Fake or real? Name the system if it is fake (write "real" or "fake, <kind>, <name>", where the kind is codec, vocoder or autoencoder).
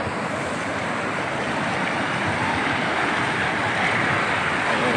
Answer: real